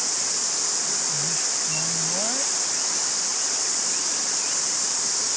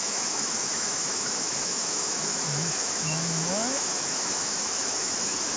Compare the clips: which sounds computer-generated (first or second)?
second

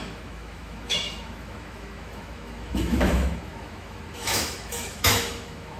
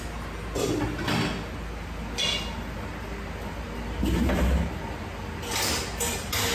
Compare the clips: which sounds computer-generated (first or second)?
first